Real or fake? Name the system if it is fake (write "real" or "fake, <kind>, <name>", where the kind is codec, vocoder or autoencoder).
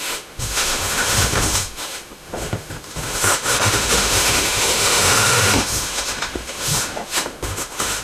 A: fake, autoencoder, DAC-VAE